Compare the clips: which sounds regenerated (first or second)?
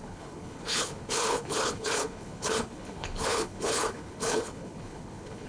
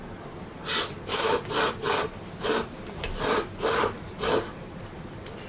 first